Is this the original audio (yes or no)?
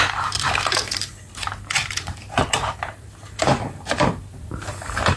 no